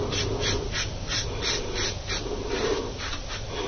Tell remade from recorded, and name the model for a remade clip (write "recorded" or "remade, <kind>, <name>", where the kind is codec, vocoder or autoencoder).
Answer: recorded